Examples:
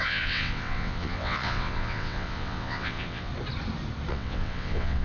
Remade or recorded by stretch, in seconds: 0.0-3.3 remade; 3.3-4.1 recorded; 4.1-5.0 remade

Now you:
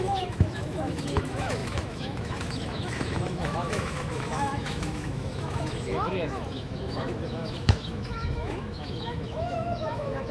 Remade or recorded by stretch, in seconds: 0.0-10.3 remade

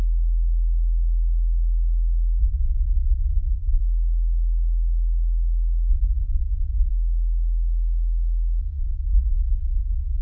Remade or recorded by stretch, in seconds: 0.0-2.4 recorded; 2.4-3.8 remade; 3.8-5.9 recorded; 5.9-6.9 remade; 6.9-8.6 recorded; 8.6-10.2 remade

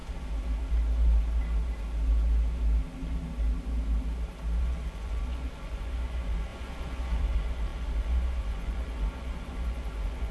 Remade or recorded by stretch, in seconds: 0.0-4.6 recorded; 4.6-10.3 remade

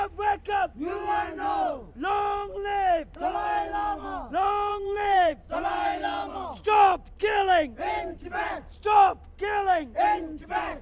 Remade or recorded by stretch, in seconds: 0.0-4.7 recorded; 4.7-5.8 remade; 5.8-10.8 recorded

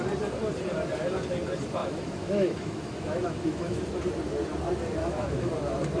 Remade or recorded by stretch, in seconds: 0.0-1.8 recorded; 1.8-3.8 remade; 3.8-5.0 recorded; 5.0-5.5 remade; 5.5-6.0 recorded

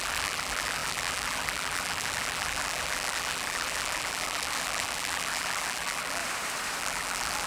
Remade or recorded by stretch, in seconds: 0.0-6.2 remade; 6.2-6.8 recorded; 6.8-7.5 remade